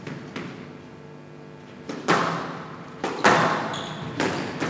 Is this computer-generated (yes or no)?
no